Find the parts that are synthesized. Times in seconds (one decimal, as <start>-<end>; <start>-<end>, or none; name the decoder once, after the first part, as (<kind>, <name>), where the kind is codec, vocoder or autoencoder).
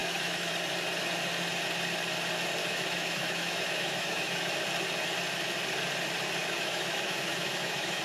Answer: 0.0-0.5 (autoencoder, DAC-VAE); 2.6-4.5; 6.4-8.0